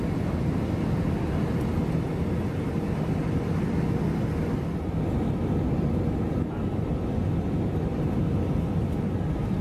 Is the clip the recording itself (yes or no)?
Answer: yes